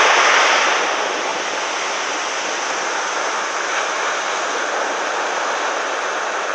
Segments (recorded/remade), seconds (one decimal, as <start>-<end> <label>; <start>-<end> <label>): 0.0-6.5 recorded

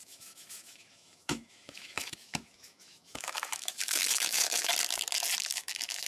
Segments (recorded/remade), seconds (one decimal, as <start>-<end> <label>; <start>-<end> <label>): 0.0-4.7 remade; 4.7-5.4 recorded; 5.4-6.1 remade

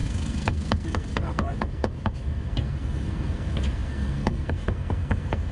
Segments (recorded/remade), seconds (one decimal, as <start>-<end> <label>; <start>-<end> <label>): 0.0-5.5 remade